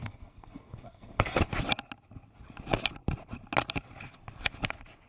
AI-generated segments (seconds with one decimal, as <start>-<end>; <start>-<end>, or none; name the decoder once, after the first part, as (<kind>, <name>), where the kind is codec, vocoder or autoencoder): 0.0-1.4 (codec, SNAC)